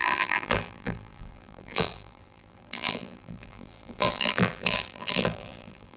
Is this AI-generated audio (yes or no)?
yes